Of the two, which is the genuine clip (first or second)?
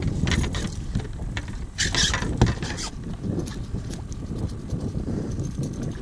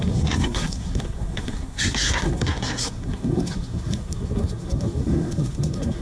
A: first